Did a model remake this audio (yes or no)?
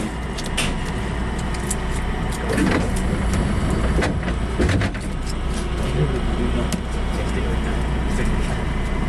no